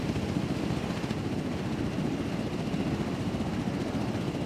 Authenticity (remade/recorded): recorded